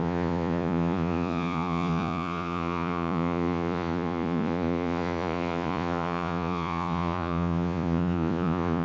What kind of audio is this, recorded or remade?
remade